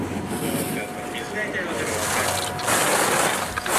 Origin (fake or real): real